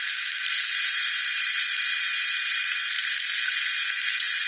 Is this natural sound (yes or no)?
yes